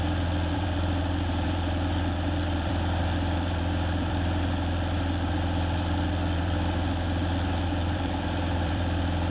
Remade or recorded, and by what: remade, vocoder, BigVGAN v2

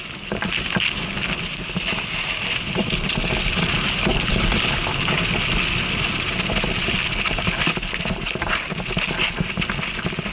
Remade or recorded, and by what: recorded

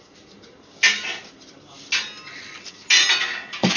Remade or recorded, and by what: recorded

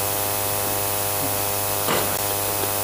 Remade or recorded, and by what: recorded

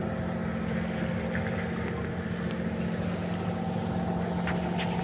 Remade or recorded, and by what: recorded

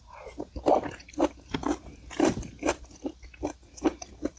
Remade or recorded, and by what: recorded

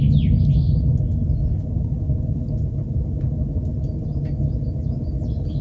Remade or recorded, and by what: recorded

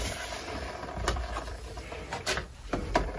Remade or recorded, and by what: remade, vocoder, BigVGAN v2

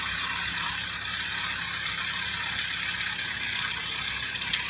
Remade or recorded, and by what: remade, vocoder, BigVGAN v2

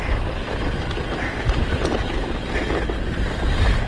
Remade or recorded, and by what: recorded